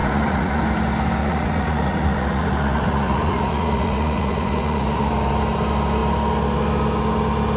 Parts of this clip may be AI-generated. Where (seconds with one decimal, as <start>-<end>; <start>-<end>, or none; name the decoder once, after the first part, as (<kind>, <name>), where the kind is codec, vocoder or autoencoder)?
0.0-0.6 (vocoder, Vocos); 1.2-5.1